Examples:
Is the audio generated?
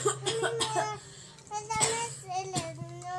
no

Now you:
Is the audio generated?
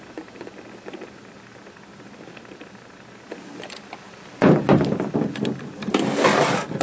yes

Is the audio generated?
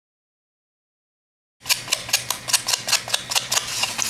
no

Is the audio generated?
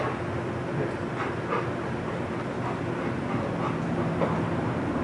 no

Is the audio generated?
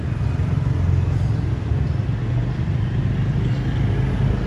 no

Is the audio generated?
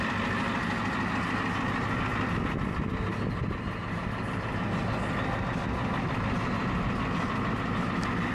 no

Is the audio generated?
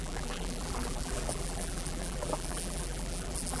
yes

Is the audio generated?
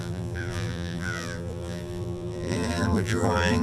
yes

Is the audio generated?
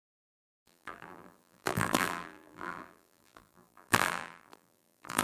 yes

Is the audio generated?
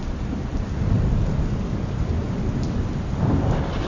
no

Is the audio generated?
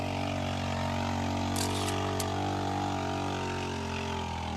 no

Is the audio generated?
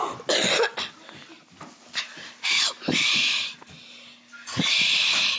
yes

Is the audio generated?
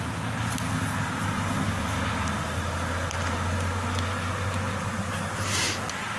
no